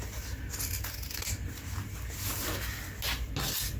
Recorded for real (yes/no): yes